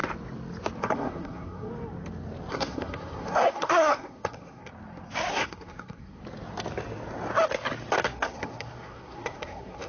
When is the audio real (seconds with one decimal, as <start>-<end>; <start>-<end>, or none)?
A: 0.0-0.8; 1.7-2.5; 4.7-5.3; 6.2-8.1

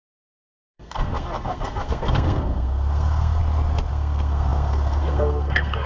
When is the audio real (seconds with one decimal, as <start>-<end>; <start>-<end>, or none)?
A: 3.4-3.9

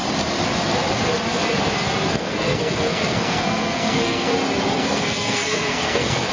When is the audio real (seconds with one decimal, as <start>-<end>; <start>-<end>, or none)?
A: 0.0-2.1; 4.3-4.8

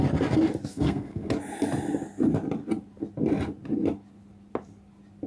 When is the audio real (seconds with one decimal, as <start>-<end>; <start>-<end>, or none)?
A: 0.0-0.7; 1.3-5.3

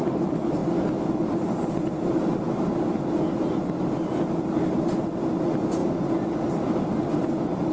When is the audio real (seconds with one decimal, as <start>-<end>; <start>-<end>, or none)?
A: 0.0-7.7

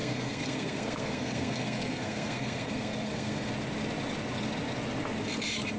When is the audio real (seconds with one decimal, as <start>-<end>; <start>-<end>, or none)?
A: 3.5-5.8